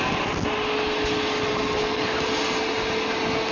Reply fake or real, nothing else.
real